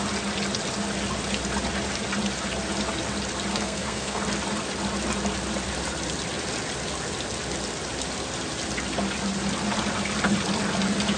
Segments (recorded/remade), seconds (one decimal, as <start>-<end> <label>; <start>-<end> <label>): 0.0-3.5 recorded; 3.5-4.2 remade; 4.2-11.2 recorded